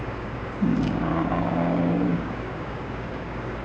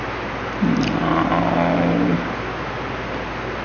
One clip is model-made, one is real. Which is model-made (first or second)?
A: first